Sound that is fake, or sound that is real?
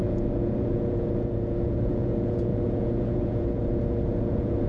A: fake